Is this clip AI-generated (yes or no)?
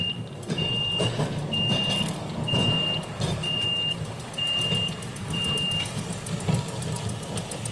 no